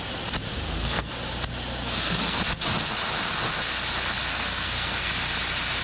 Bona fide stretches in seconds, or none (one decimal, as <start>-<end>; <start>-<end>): 0.0-0.5; 1.1-1.8; 2.4-4.3; 5.1-5.8